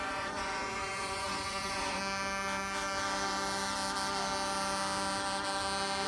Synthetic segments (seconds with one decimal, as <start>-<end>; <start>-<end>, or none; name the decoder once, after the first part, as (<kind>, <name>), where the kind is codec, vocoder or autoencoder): 0.0-2.0 (vocoder, Vocos)